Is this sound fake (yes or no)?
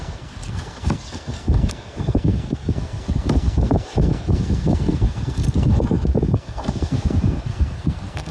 yes